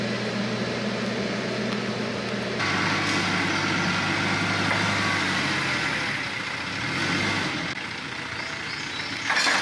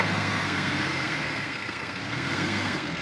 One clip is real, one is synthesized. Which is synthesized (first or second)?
second